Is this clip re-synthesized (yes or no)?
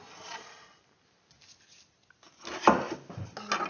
no